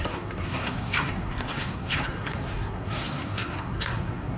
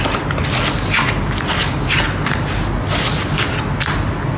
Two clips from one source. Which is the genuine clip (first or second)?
second